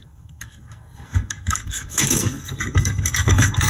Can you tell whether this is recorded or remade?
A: remade